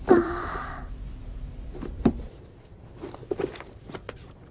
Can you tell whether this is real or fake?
fake